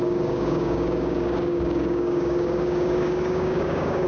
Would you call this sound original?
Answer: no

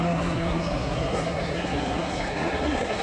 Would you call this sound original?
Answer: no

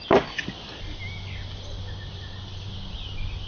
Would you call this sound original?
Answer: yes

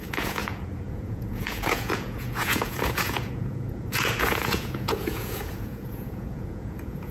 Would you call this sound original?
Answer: no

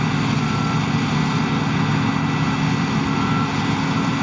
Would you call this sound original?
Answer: yes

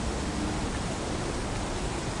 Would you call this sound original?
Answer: yes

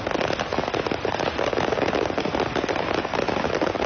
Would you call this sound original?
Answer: yes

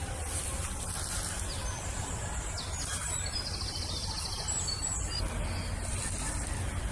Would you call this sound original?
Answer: yes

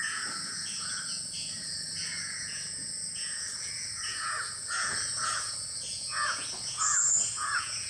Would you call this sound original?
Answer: no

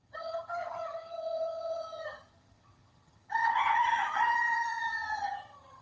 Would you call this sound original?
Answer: no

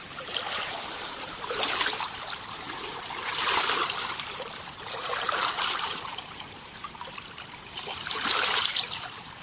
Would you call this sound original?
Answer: no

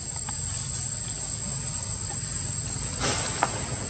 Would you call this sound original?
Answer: yes